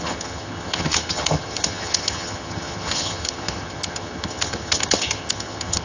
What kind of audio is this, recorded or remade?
remade